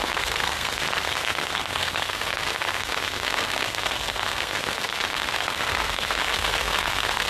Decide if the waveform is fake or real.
fake